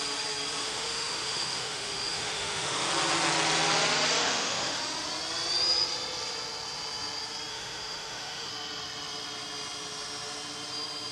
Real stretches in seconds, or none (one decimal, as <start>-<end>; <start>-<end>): 0.0-0.6; 2.9-4.2; 4.8-7.5; 8.5-11.1